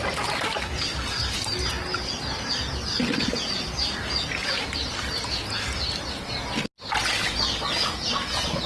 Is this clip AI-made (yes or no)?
no